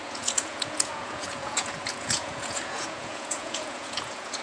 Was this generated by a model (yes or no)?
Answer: yes